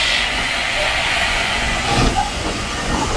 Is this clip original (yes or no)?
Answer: no